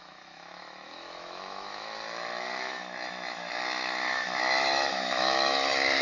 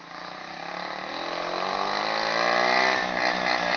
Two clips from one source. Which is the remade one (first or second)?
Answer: first